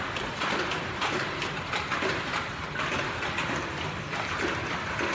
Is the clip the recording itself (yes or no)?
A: no